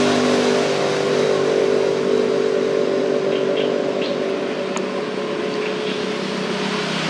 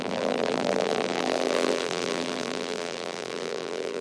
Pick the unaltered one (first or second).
first